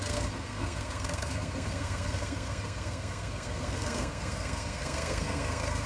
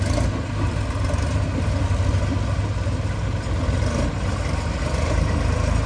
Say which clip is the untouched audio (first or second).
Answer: second